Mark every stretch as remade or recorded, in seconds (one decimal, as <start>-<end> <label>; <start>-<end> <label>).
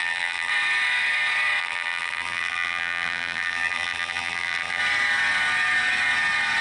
0.0-0.5 remade; 0.5-1.6 recorded; 1.6-4.8 remade; 4.8-6.6 recorded